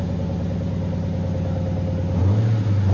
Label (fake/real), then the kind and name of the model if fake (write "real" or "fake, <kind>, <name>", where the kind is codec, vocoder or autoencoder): real